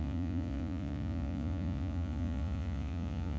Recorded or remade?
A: remade